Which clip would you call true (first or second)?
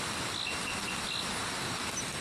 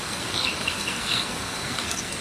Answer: first